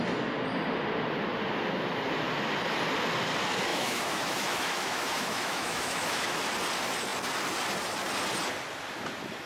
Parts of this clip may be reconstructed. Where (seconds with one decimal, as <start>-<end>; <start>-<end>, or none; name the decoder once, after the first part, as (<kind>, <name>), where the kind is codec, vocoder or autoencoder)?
3.7-6.4 (autoencoder, DAC-VAE)